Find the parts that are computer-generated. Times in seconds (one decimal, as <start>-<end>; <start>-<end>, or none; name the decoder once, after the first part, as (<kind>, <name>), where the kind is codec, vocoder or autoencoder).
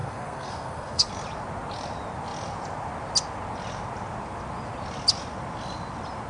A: 0.0-1.1 (codec, SNAC)